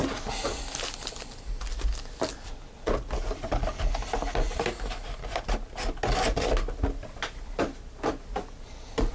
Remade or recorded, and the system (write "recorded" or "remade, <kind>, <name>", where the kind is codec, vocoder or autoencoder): recorded